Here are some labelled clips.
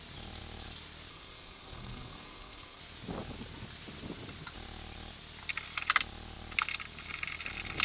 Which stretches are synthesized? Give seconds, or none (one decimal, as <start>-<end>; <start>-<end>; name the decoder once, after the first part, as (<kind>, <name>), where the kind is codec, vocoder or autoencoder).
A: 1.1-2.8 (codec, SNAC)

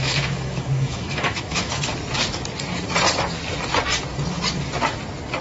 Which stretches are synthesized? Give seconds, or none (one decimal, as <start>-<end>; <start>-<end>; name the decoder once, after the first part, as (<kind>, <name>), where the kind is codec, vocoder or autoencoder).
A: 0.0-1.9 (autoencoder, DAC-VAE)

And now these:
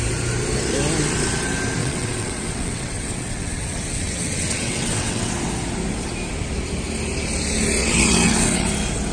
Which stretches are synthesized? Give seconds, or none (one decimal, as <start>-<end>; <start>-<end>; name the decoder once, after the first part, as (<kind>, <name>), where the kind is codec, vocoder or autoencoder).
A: 1.8-5.3 (vocoder, WaveNeXt); 7.8-8.7

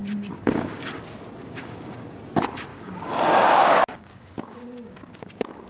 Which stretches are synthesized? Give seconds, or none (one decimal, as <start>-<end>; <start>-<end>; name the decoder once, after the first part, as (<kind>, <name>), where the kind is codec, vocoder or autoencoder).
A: 0.0-1.0 (codec, DAC); 1.4-2.2; 2.7-5.7

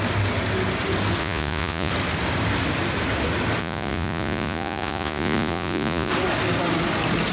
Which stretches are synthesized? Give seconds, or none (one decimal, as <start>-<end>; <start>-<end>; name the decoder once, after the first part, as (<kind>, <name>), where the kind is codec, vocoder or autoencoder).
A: 1.2-1.9 (vocoder, Vocos); 3.6-6.1

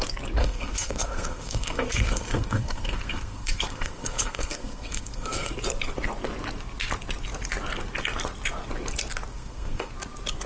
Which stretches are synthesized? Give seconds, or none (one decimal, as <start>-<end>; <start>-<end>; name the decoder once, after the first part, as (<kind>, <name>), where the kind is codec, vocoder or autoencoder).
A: 0.4-5.5 (codec, SNAC); 9.3-9.9

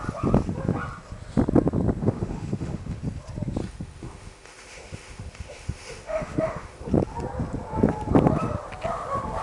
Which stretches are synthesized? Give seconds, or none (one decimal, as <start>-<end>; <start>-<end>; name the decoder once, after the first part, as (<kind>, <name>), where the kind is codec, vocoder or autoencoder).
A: 2.0-3.0 (autoencoder, DAC-VAE); 3.6-6.9